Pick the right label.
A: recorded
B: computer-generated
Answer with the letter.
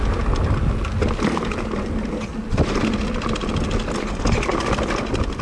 A